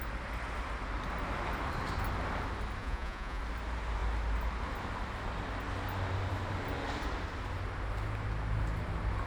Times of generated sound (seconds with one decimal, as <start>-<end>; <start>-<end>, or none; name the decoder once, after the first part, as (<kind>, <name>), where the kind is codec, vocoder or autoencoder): 2.8-3.4 (vocoder, Vocos)